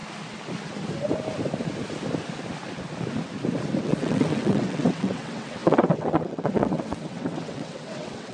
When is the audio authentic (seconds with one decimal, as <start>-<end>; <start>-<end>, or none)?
0.0-3.8